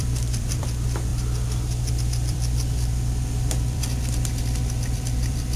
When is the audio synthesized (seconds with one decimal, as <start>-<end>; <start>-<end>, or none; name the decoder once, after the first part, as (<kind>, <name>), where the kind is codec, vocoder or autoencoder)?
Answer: 0.0-1.1 (vocoder, BigVGAN v2); 1.9-5.6